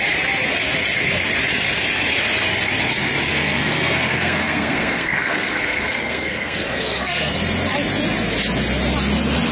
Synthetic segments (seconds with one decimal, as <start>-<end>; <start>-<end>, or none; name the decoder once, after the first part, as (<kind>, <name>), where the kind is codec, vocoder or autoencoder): 3.3-7.3 (codec, SNAC)